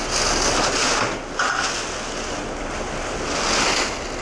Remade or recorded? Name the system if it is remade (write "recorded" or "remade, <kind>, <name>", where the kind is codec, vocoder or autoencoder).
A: recorded